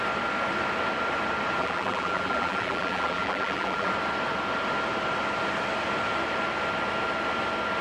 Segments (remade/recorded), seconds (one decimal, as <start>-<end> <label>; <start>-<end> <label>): 0.0-1.6 recorded; 1.6-3.9 remade; 3.9-7.8 recorded